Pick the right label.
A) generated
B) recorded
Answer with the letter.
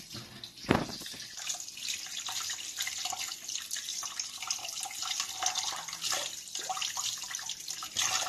B